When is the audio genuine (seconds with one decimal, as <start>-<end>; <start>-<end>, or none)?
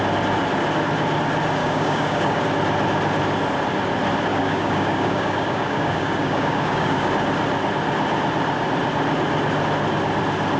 0.0-1.6; 2.4-4.3; 7.1-10.6